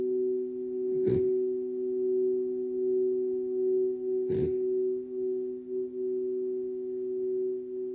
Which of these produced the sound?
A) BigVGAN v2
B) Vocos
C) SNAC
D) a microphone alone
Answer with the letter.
D